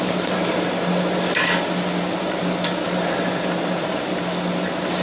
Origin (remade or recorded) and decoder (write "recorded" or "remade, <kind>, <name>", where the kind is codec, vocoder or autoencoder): recorded